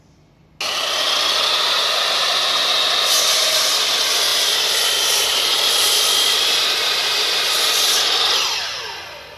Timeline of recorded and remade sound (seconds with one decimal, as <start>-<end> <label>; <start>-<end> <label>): 0.0-9.4 recorded